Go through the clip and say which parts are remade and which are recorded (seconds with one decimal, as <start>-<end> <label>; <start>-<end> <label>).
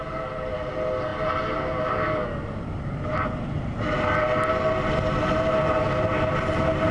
0.0-6.9 recorded